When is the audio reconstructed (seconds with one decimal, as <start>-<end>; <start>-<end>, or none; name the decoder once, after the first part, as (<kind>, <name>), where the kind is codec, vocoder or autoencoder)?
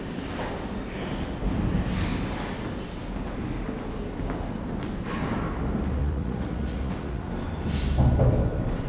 6.0-7.3 (vocoder, Vocos)